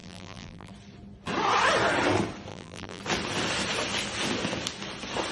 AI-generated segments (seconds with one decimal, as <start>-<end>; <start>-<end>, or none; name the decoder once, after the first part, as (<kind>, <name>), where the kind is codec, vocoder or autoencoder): 0.0-0.7 (vocoder, BigVGAN v2); 2.5-3.0